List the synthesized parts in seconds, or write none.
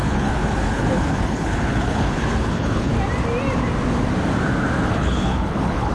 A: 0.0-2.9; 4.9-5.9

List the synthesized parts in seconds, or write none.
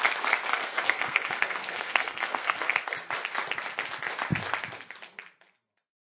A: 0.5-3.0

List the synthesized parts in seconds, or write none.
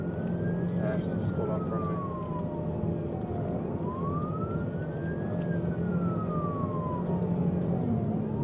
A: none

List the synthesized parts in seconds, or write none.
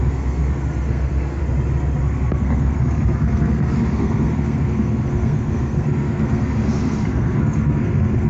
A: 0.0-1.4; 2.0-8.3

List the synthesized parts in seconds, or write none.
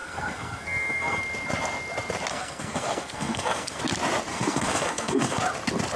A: 0.0-1.2; 2.3-3.8; 4.3-5.4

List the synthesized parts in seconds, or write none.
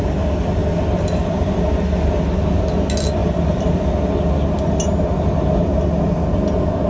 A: 0.6-1.6; 3.2-3.9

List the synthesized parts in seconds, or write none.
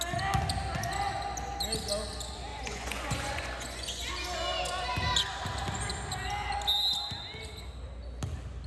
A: 2.5-4.1